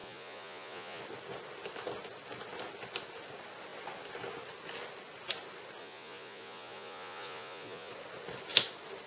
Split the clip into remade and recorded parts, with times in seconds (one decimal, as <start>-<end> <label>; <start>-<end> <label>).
0.0-1.0 remade; 1.0-5.8 recorded; 5.8-7.9 remade; 7.9-9.1 recorded